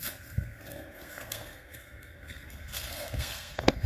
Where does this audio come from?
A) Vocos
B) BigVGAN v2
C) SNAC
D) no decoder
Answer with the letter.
C